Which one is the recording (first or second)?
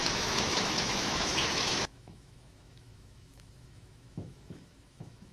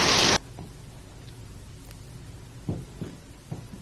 second